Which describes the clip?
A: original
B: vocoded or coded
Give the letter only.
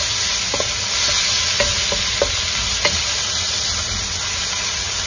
A